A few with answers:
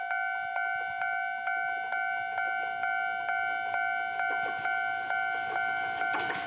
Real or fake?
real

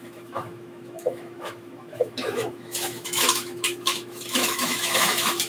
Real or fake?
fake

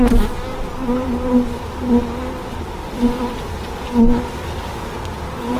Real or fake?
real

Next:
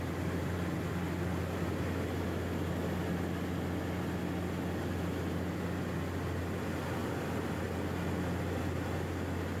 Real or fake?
real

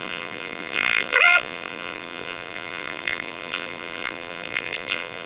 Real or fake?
fake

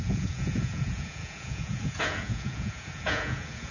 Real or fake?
fake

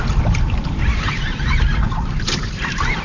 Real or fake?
real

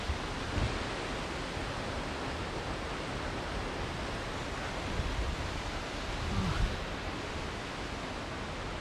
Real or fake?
real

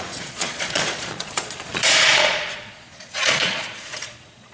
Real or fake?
fake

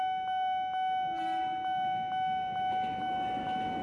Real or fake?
real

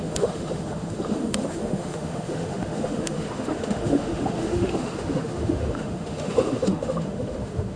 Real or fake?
fake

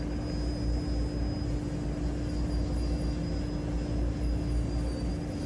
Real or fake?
real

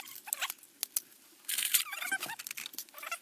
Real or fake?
real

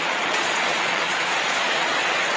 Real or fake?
fake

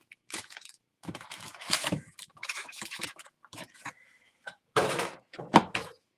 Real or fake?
fake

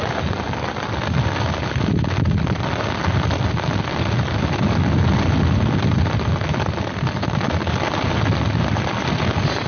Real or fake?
real